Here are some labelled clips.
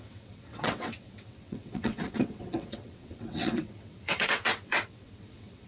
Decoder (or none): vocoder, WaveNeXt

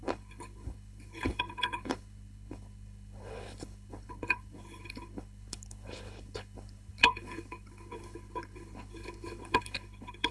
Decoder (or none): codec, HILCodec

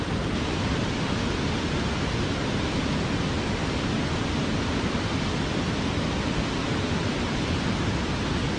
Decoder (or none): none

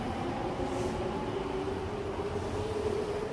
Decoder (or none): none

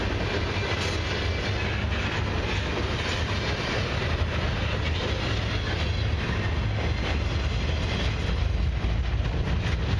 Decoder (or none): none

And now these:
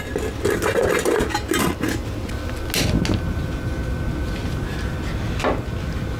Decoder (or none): none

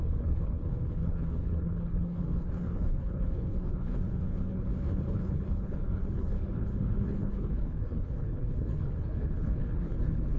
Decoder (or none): codec, HILCodec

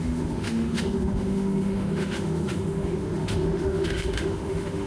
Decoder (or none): autoencoder, DAC-VAE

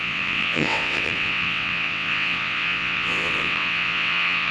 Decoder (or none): vocoder, WaveNeXt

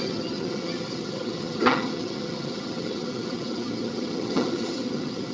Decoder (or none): vocoder, HiFi-GAN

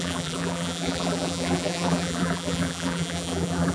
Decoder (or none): vocoder, BigVGAN v2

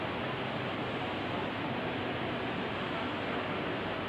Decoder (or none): none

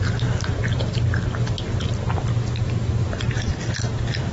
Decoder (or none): none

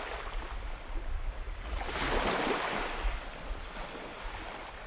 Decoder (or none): none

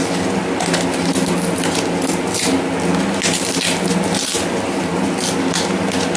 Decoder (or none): none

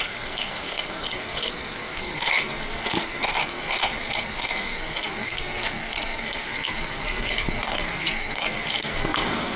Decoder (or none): codec, SNAC